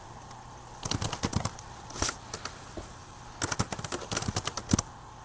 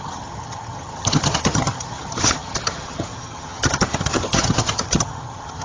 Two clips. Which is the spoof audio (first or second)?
second